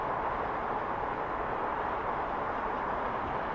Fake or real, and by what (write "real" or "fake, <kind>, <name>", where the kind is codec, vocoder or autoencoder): real